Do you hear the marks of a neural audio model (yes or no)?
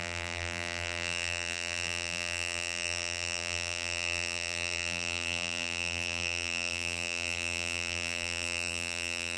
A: yes